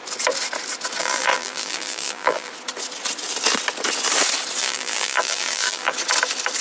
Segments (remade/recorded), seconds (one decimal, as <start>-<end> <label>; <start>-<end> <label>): 0.0-1.0 recorded; 1.0-2.5 remade; 2.5-4.6 recorded; 4.6-5.9 remade; 5.9-6.6 recorded